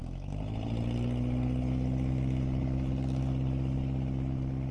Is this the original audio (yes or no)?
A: yes